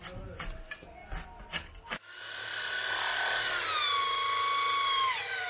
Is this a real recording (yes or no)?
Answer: yes